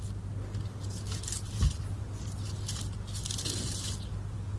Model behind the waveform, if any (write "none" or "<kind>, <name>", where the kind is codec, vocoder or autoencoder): none